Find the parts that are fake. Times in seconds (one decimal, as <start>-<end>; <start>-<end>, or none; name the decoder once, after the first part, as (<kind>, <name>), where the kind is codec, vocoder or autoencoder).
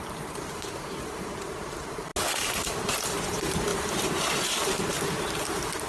0.0-2.1 (vocoder, BigVGAN v2); 3.3-5.9